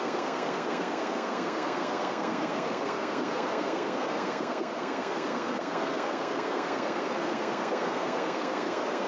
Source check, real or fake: fake